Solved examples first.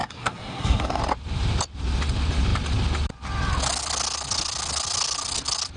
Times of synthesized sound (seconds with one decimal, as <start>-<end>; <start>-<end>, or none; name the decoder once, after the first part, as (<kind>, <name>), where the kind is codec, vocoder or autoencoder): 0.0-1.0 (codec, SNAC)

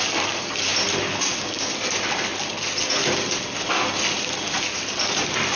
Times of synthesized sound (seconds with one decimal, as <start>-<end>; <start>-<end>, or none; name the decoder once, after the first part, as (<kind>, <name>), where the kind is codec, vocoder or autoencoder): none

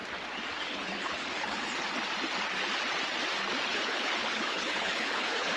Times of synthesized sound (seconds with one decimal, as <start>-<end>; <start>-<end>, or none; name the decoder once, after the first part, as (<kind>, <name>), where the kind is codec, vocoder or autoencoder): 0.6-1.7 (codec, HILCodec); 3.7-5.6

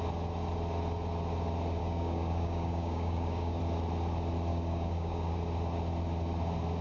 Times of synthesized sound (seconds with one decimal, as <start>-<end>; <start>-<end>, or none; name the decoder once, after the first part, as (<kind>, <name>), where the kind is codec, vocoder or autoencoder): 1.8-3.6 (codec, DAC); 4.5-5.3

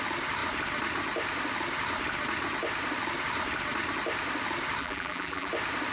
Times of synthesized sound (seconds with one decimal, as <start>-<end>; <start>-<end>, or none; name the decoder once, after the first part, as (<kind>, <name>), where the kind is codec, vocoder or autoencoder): 4.8-5.5 (vocoder, BigVGAN v2)

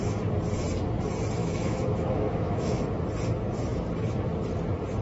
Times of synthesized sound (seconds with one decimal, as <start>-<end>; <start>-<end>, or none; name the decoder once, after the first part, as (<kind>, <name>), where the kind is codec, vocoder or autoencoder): 1.4-2.8 (autoencoder, DAC-VAE)